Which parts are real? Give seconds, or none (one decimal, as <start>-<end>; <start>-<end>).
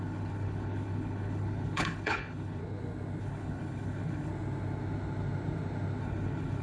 2.6-3.2; 4.3-6.0